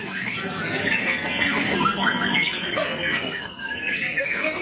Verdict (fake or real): fake